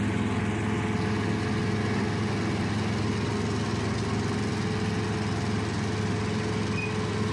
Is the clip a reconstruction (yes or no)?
no